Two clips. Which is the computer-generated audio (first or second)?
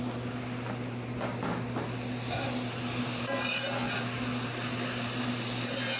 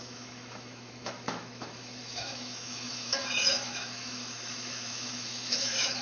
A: second